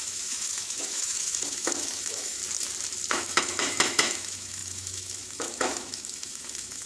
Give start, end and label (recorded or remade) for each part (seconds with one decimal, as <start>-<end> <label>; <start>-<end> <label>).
0.0-2.4 remade; 2.4-3.1 recorded; 3.1-6.9 remade